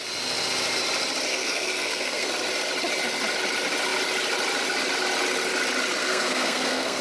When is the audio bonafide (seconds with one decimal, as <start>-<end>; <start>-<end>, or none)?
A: 0.0-1.3; 2.3-6.0